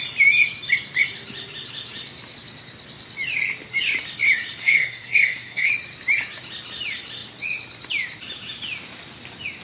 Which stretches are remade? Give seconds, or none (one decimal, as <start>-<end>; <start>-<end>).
4.6-5.7